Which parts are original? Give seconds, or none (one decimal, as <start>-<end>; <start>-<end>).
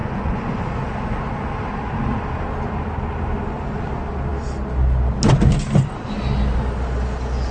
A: 0.6-7.5